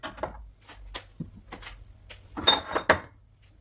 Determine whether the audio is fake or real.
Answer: real